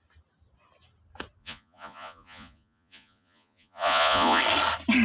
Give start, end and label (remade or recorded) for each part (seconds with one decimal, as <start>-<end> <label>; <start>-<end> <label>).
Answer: 0.0-1.4 recorded; 1.4-4.4 remade; 4.4-5.0 recorded